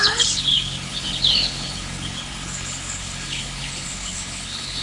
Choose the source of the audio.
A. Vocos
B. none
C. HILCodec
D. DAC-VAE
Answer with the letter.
C